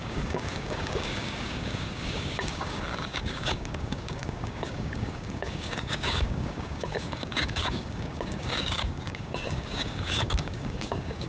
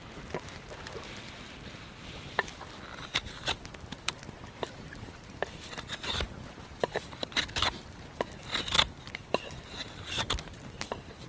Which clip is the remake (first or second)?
first